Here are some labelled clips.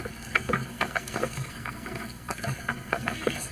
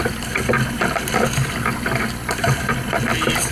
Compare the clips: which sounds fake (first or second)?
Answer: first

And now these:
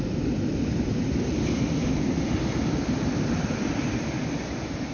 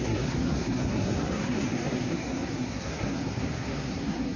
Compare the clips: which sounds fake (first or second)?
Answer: second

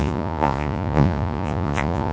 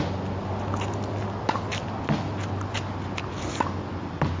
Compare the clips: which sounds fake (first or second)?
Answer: first